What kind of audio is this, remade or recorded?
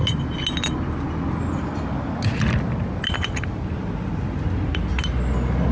recorded